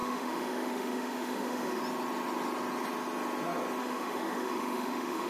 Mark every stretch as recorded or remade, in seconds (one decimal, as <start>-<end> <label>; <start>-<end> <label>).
0.0-1.8 remade; 1.8-3.8 recorded; 3.8-5.3 remade